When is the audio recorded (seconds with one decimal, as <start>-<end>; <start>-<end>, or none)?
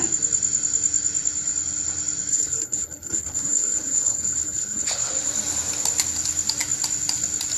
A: 0.0-2.3; 5.1-7.6